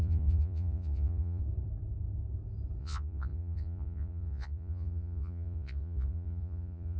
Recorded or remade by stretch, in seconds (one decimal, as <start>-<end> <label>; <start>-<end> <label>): 0.0-1.4 remade; 1.4-2.8 recorded; 2.8-7.0 remade